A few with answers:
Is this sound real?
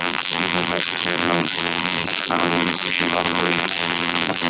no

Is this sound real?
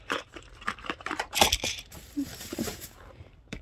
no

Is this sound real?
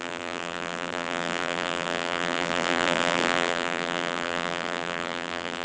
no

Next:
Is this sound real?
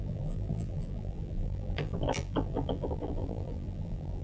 no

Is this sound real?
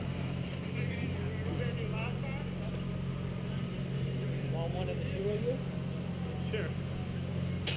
yes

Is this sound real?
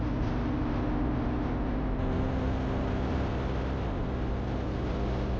yes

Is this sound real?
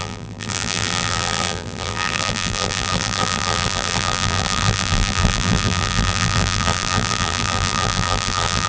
no